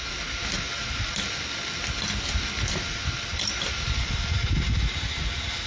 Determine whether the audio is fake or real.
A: real